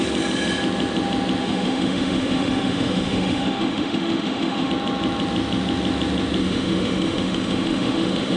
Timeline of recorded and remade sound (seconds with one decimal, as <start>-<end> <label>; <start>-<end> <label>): 0.0-1.4 recorded; 1.4-4.7 remade; 4.7-6.4 recorded; 6.4-8.4 remade